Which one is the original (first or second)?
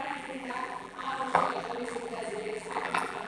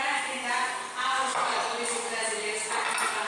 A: second